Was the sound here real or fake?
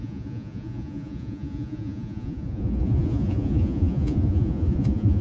fake